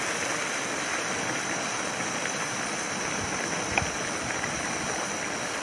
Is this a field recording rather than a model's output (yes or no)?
yes